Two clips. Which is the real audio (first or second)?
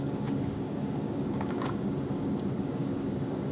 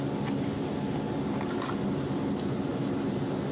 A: second